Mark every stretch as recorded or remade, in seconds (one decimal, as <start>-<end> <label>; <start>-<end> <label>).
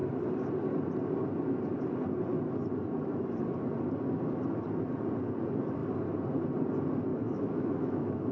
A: 0.0-7.1 recorded; 7.1-8.3 remade